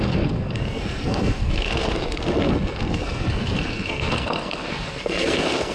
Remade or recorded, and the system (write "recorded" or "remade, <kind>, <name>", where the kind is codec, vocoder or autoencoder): remade, codec, SNAC